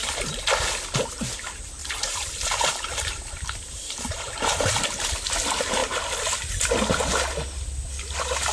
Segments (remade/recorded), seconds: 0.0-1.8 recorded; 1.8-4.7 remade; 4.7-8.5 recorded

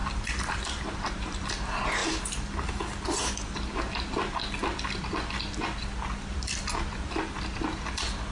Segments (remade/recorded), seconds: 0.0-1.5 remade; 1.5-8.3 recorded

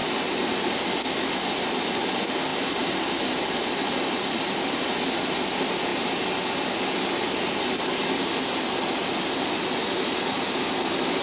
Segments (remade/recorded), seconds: 0.0-2.5 recorded; 2.5-4.4 remade; 4.4-11.2 recorded